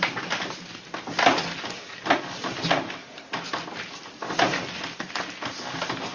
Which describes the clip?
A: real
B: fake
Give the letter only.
A